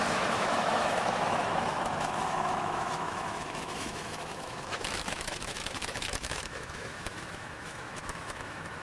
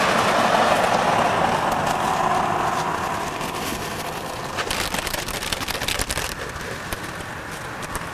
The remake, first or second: first